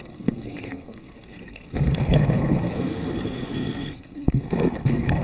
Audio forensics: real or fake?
fake